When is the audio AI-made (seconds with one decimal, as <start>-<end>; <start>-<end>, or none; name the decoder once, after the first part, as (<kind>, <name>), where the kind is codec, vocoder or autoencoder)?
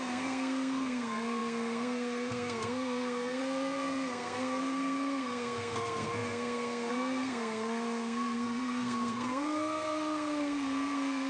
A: 0.0-11.3 (codec, SNAC)